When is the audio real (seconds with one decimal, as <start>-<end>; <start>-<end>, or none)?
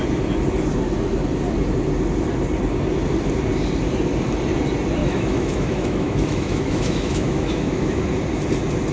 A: 0.0-5.0; 8.0-8.9